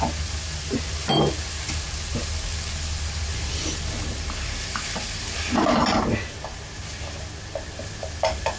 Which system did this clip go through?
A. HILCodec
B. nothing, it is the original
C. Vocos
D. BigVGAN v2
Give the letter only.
B